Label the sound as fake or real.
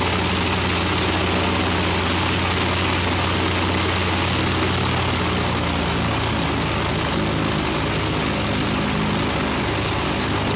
real